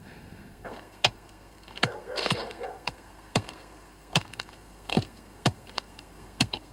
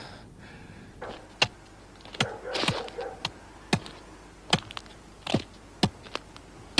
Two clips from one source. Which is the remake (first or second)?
first